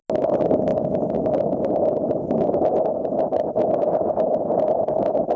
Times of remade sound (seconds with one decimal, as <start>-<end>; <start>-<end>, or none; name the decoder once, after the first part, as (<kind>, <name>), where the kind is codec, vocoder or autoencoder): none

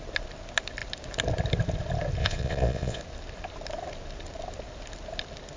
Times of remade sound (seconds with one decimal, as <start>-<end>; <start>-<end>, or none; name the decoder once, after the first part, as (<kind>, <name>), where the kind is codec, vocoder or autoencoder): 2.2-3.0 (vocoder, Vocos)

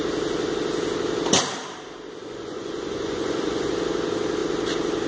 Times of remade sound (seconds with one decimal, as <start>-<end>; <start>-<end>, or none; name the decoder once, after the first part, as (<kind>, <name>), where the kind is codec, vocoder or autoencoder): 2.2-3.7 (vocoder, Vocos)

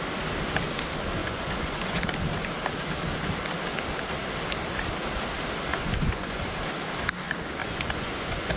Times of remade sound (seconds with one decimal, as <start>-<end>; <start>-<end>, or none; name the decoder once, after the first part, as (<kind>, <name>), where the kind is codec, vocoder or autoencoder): 1.2-2.0 (vocoder, Vocos); 5.7-6.4; 7.6-8.6

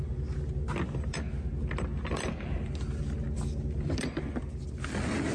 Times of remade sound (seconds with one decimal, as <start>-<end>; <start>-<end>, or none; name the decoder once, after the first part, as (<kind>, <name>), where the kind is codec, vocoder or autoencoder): none